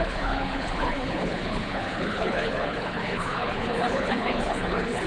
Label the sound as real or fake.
fake